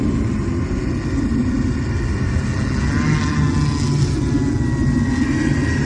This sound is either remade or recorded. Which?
recorded